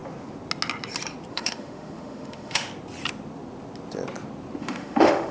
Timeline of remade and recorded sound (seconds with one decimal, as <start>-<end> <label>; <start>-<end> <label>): 0.0-1.3 recorded; 1.3-2.7 remade; 2.7-4.6 recorded; 4.6-5.3 remade

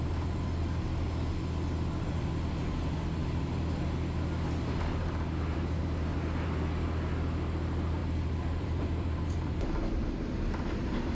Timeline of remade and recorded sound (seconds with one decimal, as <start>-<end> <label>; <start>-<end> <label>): 0.0-8.0 recorded; 8.0-11.1 remade

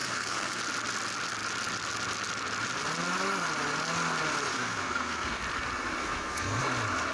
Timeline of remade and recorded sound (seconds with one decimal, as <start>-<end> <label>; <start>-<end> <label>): 0.0-0.6 remade; 0.6-4.5 recorded; 4.5-5.4 remade; 5.4-6.0 recorded; 6.0-6.6 remade; 6.6-7.1 recorded

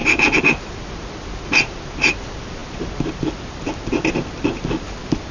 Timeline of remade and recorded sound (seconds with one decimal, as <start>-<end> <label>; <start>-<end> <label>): 0.0-5.3 recorded

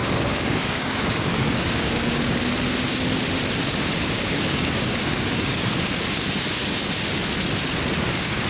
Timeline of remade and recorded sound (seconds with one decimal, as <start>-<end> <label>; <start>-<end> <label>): 0.0-2.4 remade; 2.4-3.9 recorded; 3.9-5.7 remade; 5.7-8.5 recorded